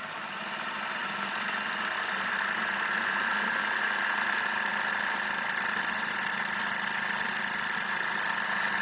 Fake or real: real